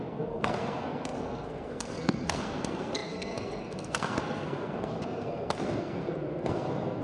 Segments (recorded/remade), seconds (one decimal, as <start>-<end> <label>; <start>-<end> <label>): 0.0-7.0 remade